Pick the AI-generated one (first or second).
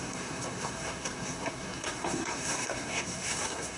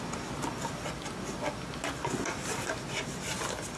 first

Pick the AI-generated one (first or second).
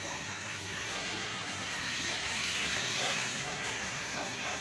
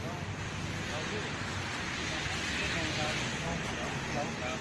first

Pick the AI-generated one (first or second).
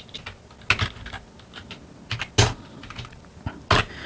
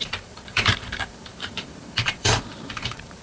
second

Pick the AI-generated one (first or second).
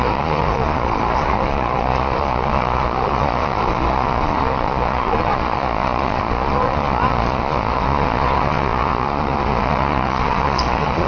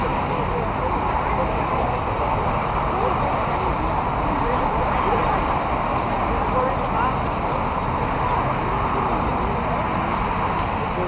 first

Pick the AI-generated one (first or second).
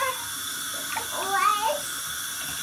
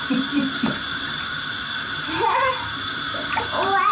second